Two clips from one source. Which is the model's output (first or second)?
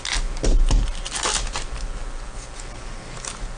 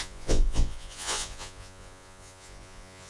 second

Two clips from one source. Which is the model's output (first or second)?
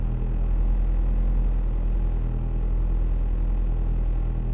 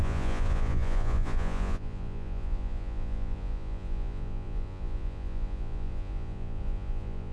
second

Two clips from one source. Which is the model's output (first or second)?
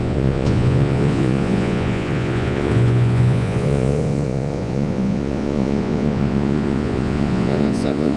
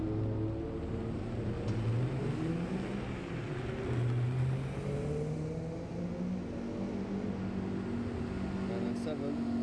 first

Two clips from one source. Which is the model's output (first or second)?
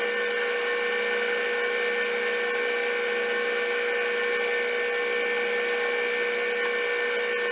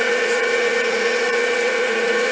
second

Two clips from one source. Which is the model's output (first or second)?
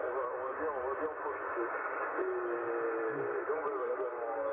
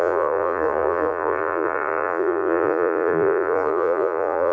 second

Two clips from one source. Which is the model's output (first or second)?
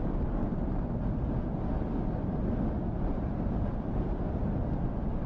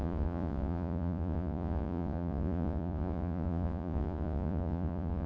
second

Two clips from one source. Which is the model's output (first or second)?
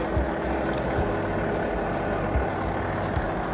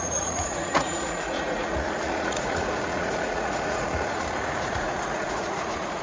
second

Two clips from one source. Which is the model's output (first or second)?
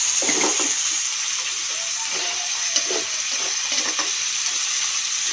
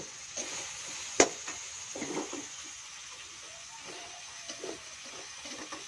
second